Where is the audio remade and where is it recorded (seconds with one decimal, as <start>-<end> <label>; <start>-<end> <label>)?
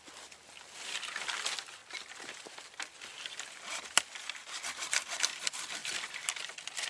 0.0-1.8 remade; 1.8-4.7 recorded; 4.7-6.9 remade